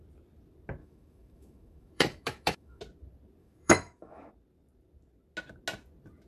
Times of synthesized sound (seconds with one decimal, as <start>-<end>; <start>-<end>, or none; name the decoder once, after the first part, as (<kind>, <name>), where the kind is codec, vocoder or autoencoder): 0.8-2.8 (autoencoder, DAC-VAE); 3.4-4.3